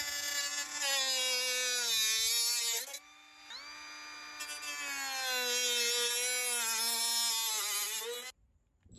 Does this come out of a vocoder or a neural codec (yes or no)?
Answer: no